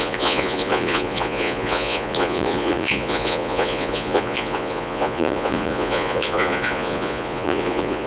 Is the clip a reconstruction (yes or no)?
yes